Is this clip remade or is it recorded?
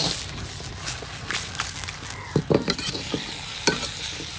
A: recorded